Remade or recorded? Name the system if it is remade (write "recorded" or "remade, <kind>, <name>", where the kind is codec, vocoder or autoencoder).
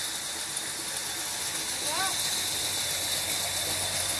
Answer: recorded